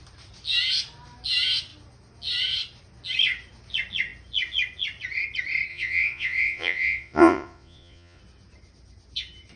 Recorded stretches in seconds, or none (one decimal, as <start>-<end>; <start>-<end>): 0.0-5.7; 8.2-9.6